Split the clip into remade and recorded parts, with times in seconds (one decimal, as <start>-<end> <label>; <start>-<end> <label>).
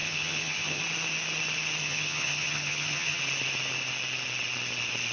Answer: 0.0-0.8 remade; 0.8-1.8 recorded; 1.8-3.2 remade; 3.2-5.1 recorded